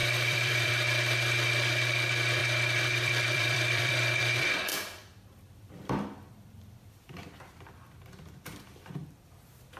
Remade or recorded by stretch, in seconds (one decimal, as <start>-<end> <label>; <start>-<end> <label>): 0.0-0.7 remade; 0.7-2.4 recorded; 2.4-4.2 remade; 4.2-4.7 recorded; 4.7-8.9 remade; 8.9-9.8 recorded